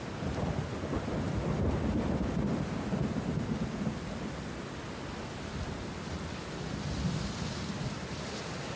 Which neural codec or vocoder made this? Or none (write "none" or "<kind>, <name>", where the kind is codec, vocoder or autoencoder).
none